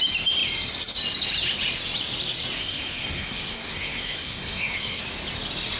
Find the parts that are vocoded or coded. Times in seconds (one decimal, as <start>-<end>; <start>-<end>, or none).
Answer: 2.6-5.0